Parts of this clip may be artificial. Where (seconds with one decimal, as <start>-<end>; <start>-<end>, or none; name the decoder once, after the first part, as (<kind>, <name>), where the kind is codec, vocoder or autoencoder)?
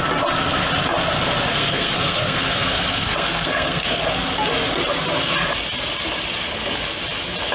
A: 1.5-4.0 (codec, SNAC)